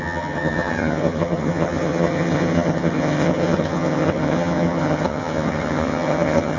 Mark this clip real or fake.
fake